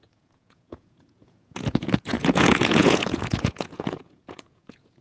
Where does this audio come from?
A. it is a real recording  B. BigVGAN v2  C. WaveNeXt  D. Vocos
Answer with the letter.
D